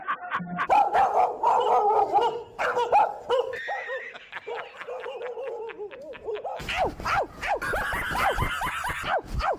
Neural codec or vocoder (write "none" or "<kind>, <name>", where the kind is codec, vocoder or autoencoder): none